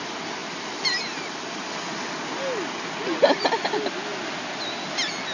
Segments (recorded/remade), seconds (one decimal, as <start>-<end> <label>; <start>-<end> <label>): 0.0-5.3 recorded